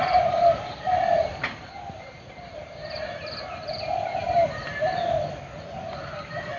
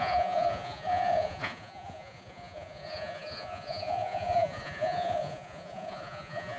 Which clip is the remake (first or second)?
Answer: second